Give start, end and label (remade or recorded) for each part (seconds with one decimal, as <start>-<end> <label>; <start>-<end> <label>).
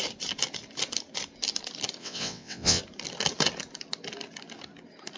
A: 0.0-2.0 recorded; 2.0-2.8 remade; 2.8-5.2 recorded